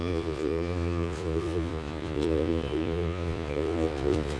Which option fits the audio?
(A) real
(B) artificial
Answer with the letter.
B